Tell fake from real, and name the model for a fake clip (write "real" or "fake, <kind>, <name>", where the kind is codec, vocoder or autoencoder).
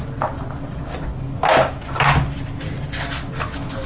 real